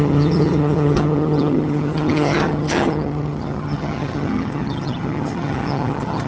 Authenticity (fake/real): fake